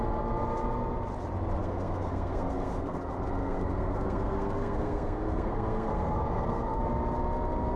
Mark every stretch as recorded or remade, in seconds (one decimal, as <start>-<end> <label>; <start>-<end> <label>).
0.0-1.6 recorded; 1.6-3.0 remade; 3.0-3.4 recorded; 3.4-6.8 remade; 6.8-7.8 recorded

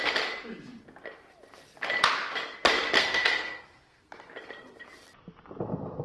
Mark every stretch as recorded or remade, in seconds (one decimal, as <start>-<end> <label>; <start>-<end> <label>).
0.0-3.0 recorded; 3.0-4.1 remade; 4.1-6.0 recorded

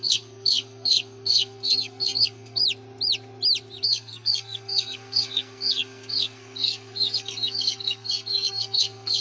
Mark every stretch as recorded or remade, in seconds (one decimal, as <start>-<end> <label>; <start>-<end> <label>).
0.0-2.6 remade; 2.6-3.8 recorded; 3.8-9.2 remade

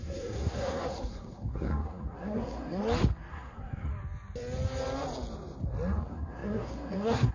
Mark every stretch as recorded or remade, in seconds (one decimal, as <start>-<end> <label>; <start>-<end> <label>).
0.0-2.8 remade; 2.8-3.3 recorded; 3.3-3.9 remade; 3.9-6.0 recorded; 6.0-7.3 remade

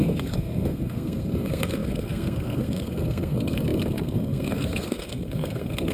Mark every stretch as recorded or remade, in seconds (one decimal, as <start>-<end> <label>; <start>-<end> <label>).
0.0-5.9 remade

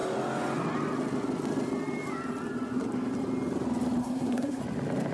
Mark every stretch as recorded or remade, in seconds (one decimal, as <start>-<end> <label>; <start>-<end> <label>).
0.0-4.0 recorded; 4.0-4.6 remade; 4.6-5.1 recorded

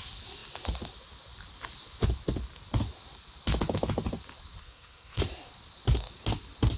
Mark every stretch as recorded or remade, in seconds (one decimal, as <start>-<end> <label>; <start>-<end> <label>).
0.0-4.6 recorded; 4.6-5.2 remade; 5.2-6.8 recorded

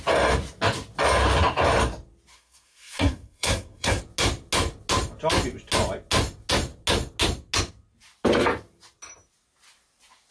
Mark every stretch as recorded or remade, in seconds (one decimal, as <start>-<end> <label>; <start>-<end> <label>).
0.0-2.3 recorded; 2.3-4.0 remade; 4.0-10.3 recorded